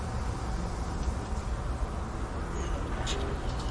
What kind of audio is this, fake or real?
real